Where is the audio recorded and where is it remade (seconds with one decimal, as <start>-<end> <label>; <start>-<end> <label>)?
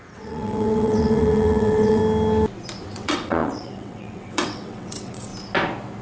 0.0-2.0 remade; 2.0-2.8 recorded; 2.8-5.3 remade; 5.3-6.0 recorded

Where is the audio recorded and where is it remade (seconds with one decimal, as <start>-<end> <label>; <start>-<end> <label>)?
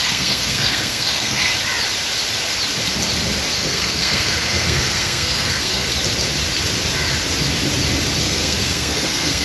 0.0-1.5 remade; 1.5-3.5 recorded; 3.5-5.9 remade; 5.9-8.2 recorded; 8.2-9.4 remade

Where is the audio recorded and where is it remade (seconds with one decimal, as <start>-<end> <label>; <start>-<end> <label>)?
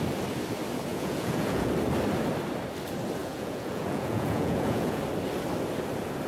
0.0-0.9 recorded; 0.9-1.7 remade; 1.7-3.2 recorded; 3.2-5.0 remade; 5.0-6.3 recorded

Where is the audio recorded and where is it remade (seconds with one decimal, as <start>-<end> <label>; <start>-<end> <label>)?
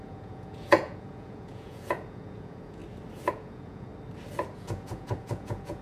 0.0-2.8 remade; 2.8-3.3 recorded; 3.3-3.9 remade; 3.9-4.6 recorded; 4.6-5.8 remade